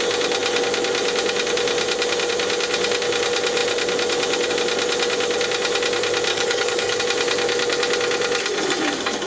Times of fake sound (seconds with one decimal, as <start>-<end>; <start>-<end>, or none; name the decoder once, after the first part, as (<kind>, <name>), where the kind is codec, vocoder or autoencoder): 6.3-7.0 (codec, DAC)